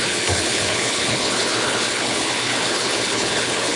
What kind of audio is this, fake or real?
fake